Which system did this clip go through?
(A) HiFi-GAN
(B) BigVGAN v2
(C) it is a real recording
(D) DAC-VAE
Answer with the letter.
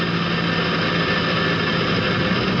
C